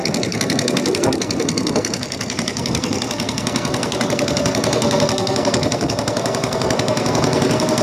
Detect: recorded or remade remade